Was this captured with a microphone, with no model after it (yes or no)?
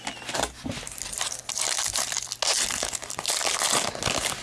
yes